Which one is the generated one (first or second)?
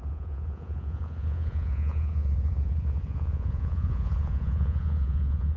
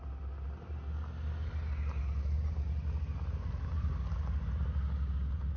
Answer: first